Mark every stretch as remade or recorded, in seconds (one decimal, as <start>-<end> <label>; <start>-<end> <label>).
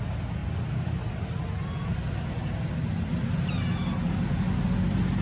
0.0-5.2 recorded